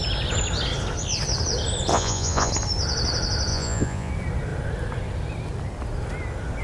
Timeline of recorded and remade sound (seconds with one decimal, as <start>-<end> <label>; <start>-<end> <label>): 0.0-1.9 recorded; 1.9-2.5 remade; 2.5-3.5 recorded; 3.5-4.1 remade; 4.1-6.6 recorded